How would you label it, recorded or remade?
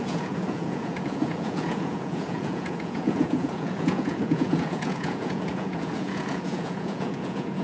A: remade